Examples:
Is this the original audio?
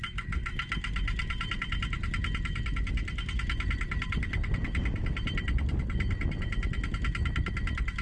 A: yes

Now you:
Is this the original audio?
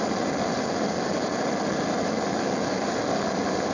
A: yes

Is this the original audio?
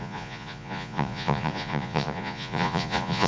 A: no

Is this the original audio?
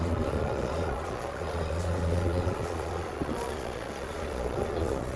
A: no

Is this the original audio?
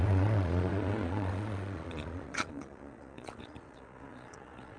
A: no